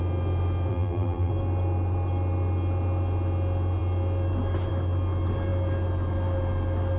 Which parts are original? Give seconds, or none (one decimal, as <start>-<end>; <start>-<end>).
0.0-0.7; 1.3-7.0